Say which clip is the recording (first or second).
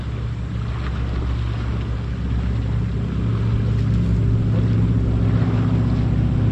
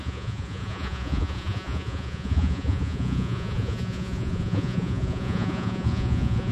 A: first